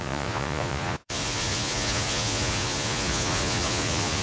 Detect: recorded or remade remade